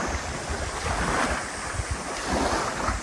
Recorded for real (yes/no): yes